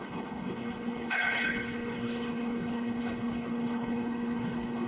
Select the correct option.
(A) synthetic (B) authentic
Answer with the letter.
A